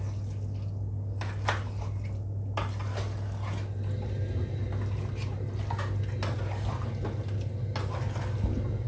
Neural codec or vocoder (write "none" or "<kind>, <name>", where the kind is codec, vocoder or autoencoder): none